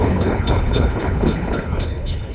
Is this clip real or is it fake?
fake